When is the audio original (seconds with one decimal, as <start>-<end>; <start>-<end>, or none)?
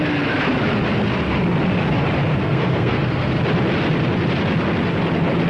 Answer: 0.0-2.4; 3.4-5.5